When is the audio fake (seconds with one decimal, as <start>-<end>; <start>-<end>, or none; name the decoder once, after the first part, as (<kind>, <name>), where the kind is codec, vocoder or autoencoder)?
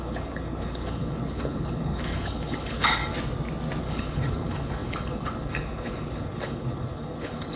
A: 0.0-3.0 (codec, HILCodec); 3.8-7.6